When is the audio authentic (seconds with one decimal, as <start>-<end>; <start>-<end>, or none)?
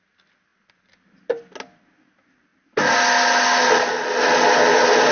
0.0-5.1